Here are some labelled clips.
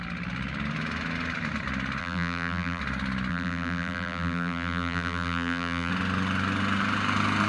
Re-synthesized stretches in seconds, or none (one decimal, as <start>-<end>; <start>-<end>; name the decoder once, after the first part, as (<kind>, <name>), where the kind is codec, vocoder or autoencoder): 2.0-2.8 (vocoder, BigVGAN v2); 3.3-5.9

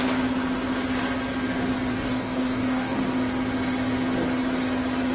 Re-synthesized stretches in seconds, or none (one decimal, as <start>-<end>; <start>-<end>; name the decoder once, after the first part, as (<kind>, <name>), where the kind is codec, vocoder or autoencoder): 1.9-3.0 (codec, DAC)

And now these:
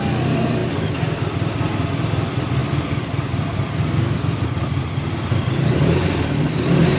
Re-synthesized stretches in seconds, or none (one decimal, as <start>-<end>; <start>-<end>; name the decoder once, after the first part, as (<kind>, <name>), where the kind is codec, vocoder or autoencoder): none

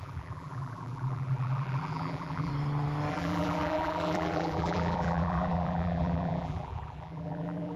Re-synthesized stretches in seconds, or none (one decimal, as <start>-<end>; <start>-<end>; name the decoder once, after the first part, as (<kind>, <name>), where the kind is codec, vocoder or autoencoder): 0.0-2.5 (vocoder, BigVGAN v2); 3.1-7.8